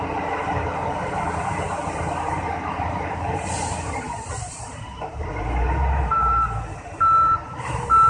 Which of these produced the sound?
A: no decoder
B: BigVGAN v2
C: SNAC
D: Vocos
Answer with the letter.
B